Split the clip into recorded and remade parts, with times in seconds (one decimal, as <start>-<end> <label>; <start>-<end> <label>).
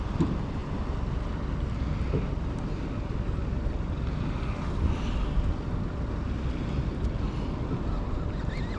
0.0-8.8 recorded